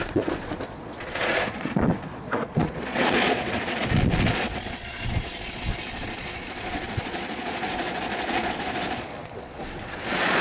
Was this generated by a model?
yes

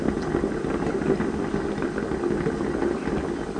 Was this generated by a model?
no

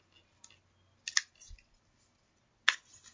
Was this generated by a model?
no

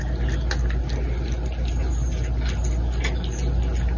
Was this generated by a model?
no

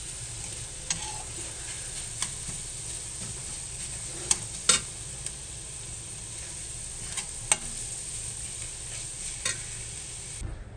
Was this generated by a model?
no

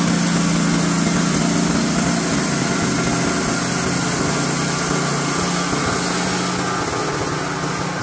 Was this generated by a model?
no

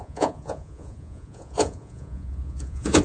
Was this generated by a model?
yes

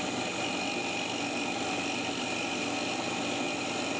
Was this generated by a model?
no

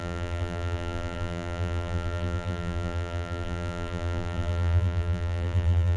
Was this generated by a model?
yes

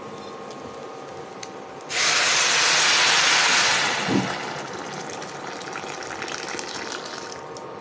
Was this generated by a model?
no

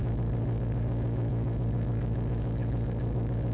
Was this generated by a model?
yes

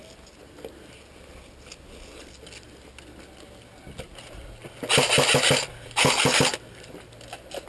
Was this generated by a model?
no